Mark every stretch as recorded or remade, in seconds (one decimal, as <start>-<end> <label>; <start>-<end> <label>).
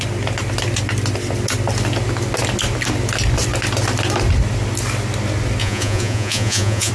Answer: 0.0-5.6 recorded; 5.6-6.9 remade